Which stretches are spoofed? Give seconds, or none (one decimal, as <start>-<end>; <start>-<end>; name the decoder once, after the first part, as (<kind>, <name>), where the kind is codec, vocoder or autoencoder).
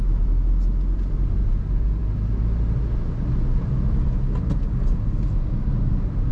none